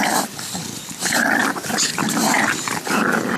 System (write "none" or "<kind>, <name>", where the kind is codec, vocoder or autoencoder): none